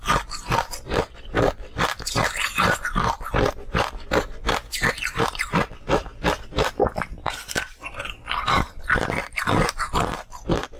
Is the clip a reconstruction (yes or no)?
yes